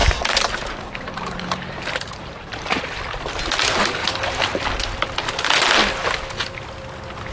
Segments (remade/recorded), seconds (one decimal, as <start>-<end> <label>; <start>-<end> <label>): 0.0-3.0 remade; 3.0-4.0 recorded; 4.0-4.7 remade; 4.7-7.3 recorded